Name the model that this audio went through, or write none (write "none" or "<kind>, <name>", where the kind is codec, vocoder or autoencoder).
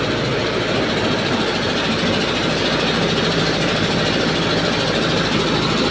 none